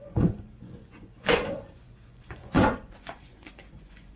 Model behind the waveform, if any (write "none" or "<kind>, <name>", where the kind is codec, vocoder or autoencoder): vocoder, Vocos